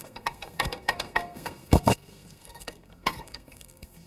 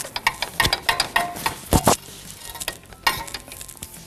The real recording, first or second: second